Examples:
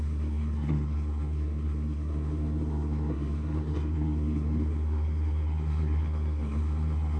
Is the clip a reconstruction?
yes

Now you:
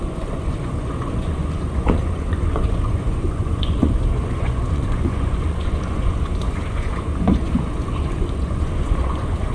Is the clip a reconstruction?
yes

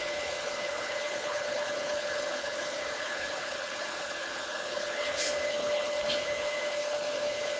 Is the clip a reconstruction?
yes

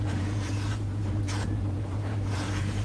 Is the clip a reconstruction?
yes